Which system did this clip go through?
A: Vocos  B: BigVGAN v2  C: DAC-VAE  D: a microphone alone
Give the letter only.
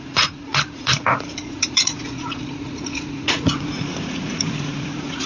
A